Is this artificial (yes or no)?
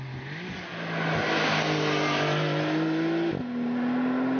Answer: no